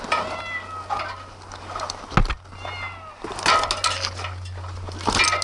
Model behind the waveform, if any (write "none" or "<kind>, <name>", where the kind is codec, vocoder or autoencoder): none